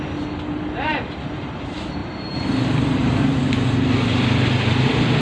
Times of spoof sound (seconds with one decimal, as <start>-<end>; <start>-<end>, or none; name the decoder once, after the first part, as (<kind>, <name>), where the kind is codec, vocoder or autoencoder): 0.0-5.2 (vocoder, BigVGAN v2)